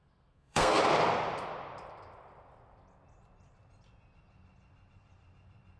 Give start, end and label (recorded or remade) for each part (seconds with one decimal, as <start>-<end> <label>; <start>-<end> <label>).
0.0-0.8 remade; 0.8-5.8 recorded